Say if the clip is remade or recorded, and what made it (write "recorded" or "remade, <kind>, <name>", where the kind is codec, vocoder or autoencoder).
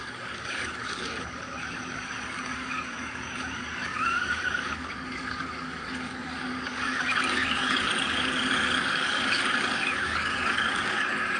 remade, codec, DAC